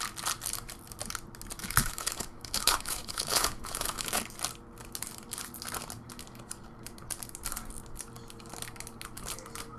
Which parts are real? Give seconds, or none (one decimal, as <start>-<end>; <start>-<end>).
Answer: 0.0-1.6; 4.2-9.8